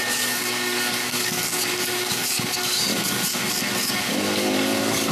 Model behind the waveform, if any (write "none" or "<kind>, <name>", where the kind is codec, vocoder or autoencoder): codec, DAC